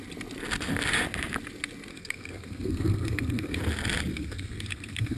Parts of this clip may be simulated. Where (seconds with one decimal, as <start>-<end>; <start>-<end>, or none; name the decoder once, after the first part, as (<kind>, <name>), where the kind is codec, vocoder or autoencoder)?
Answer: 1.9-3.6 (codec, SNAC); 4.1-5.2